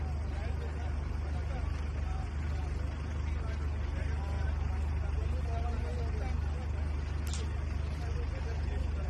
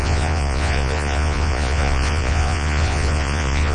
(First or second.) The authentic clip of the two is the first